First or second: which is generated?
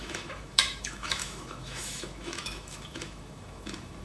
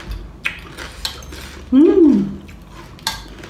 first